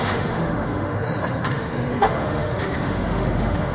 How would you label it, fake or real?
fake